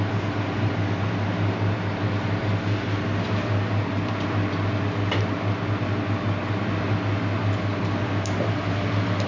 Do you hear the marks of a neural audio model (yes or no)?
no